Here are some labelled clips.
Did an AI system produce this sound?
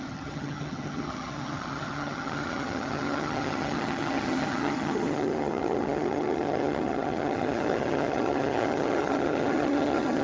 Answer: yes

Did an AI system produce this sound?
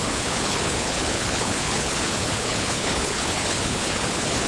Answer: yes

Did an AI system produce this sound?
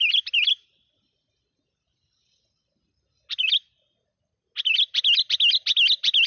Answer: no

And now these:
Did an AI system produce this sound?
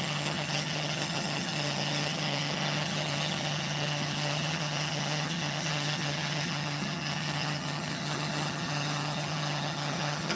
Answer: yes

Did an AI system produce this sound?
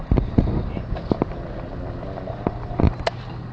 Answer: no